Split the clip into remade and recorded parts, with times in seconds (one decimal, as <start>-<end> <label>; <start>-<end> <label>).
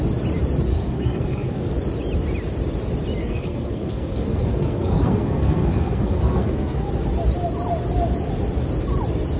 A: 0.0-0.7 recorded; 0.7-1.7 remade; 1.7-3.2 recorded; 3.2-6.9 remade; 6.9-9.4 recorded